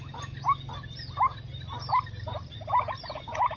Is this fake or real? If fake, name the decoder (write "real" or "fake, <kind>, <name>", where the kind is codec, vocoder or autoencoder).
real